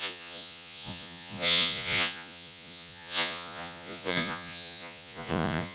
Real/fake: fake